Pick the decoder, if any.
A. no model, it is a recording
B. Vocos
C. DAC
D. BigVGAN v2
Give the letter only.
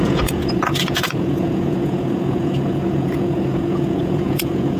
B